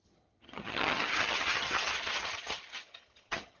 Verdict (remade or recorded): remade